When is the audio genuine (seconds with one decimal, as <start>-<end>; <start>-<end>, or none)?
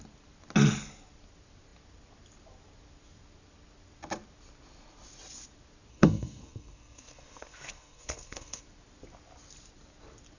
0.0-5.9; 8.6-10.4